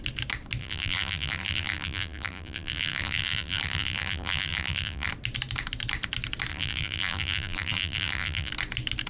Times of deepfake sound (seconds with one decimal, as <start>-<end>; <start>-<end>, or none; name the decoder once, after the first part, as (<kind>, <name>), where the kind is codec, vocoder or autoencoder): 0.6-5.1 (vocoder, BigVGAN v2); 6.5-8.5